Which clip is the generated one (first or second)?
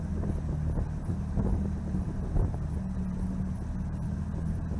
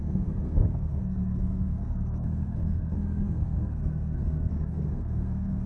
second